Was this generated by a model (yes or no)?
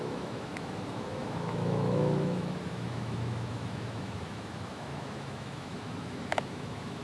yes